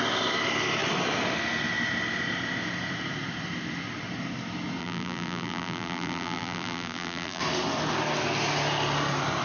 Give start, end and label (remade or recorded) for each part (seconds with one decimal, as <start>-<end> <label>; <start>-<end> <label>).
0.0-4.8 recorded; 4.8-7.4 remade; 7.4-9.4 recorded